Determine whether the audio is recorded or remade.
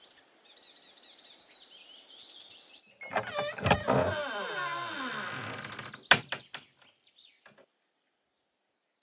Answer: recorded